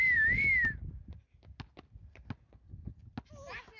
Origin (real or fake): real